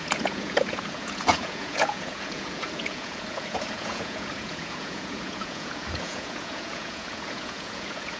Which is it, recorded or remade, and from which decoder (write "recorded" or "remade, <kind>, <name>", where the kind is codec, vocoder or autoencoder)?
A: remade, vocoder, Vocos